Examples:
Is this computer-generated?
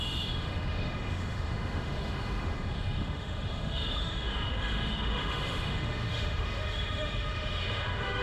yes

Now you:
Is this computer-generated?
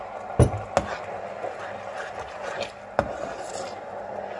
no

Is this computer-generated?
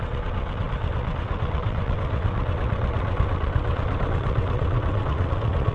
yes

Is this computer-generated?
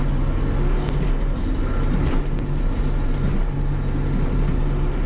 no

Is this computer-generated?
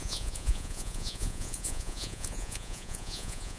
yes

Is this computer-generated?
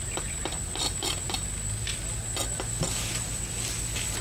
no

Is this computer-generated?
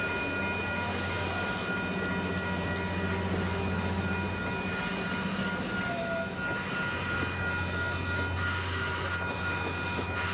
no